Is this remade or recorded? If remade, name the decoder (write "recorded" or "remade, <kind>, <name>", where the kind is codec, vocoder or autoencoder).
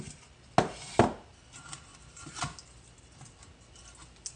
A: recorded